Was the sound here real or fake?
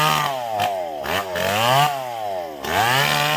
real